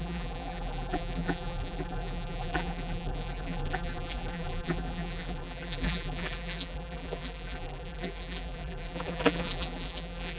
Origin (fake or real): fake